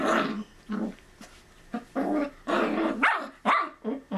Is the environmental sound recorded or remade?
recorded